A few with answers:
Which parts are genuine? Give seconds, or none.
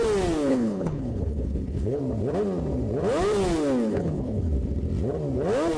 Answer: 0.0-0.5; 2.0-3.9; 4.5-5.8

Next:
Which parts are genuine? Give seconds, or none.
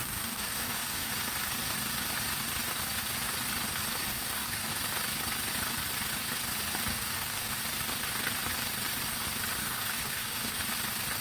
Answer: 1.1-4.1; 4.8-6.9; 7.6-9.6; 10.6-11.2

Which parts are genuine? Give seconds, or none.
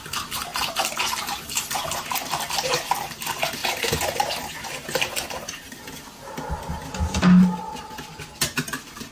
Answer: 0.0-0.5; 1.6-9.1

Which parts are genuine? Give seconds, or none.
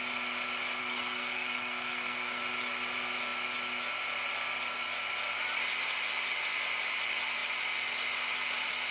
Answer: 0.0-0.8; 2.4-8.9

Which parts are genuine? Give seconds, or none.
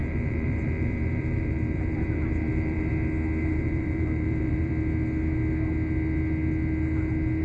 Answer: 2.9-3.5; 4.7-7.4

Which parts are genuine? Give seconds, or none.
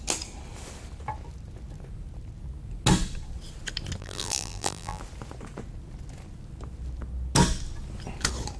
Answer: 0.0-4.0; 5.0-8.6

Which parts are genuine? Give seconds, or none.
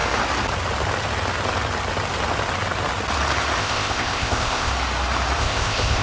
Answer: 0.0-3.6; 4.7-5.4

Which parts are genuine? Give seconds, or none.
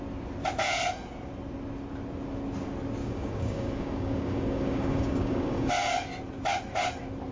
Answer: 0.0-3.0; 5.7-7.3